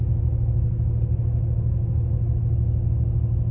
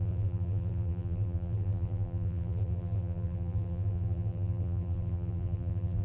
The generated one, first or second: second